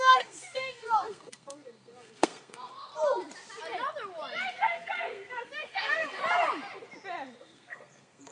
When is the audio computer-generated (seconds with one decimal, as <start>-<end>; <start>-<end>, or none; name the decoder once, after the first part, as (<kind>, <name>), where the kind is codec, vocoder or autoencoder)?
0.0-2.9 (codec, SNAC); 4.5-6.2; 7.4-8.3